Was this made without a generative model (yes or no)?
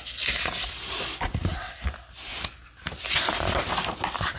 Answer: yes